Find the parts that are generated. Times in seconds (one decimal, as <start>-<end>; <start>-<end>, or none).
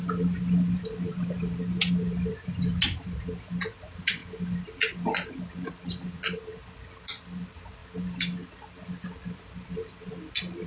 none